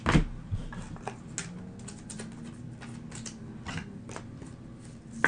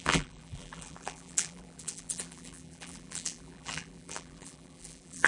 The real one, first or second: first